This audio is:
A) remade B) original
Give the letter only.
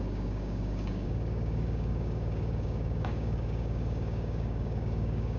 A